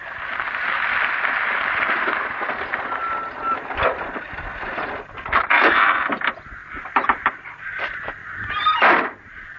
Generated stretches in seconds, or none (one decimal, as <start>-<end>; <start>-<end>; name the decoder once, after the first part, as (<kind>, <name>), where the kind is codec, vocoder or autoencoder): 0.0-4.6 (vocoder, BigVGAN v2); 6.6-7.6; 8.2-8.9